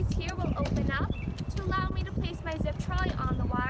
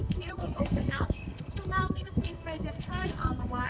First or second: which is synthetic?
second